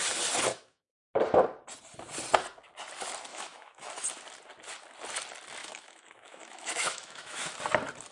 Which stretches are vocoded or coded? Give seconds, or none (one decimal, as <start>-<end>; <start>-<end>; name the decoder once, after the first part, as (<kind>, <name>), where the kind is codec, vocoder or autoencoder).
0.5-1.0 (autoencoder, DAC-VAE); 3.3-3.9; 5.6-7.5